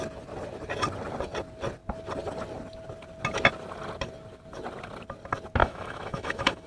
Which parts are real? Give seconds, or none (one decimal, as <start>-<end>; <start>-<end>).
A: 0.0-5.6